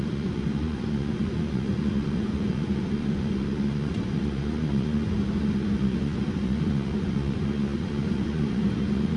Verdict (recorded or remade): remade